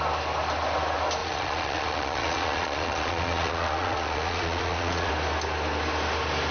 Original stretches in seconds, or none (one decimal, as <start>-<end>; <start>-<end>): 0.0-1.2; 5.1-6.5